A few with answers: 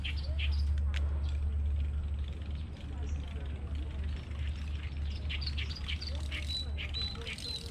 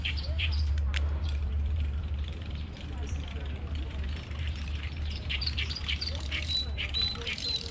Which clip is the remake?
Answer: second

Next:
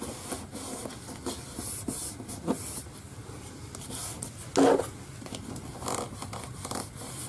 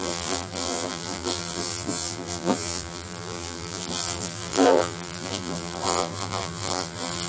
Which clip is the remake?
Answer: second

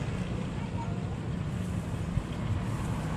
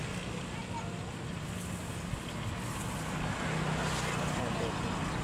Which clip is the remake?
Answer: first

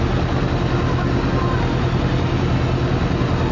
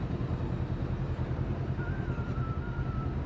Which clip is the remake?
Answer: second